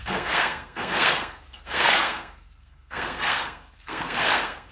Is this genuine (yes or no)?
no